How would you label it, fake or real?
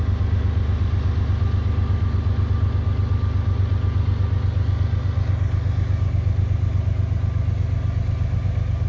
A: real